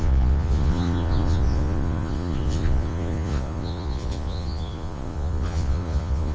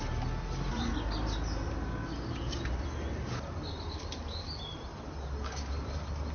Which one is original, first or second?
second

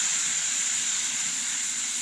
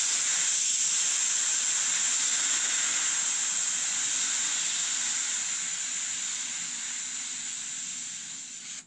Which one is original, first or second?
second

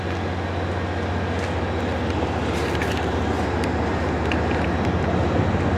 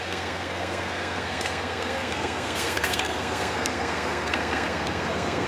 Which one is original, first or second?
first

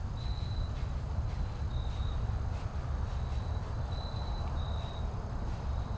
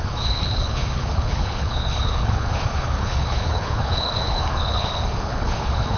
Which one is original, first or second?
first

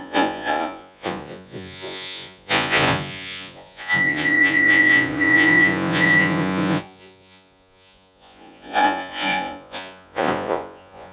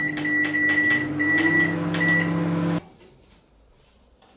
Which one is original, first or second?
second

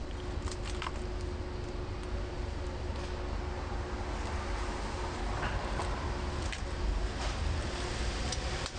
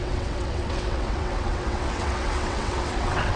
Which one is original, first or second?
first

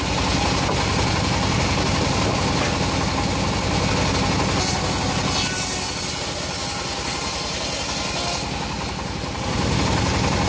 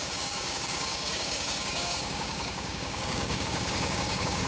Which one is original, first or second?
first